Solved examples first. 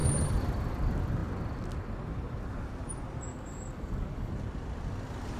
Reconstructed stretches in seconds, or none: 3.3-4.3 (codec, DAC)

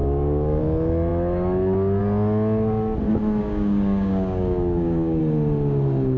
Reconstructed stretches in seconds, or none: 0.0-0.6 (codec, DAC); 3.4-5.2

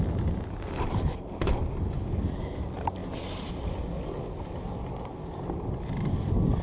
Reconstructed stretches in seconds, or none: none

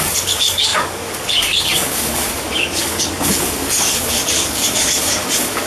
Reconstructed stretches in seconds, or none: 0.0-5.7 (codec, DAC)

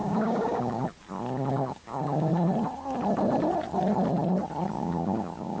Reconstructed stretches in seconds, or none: 0.0-0.8 (codec, DAC); 1.5-2.3; 4.7-5.6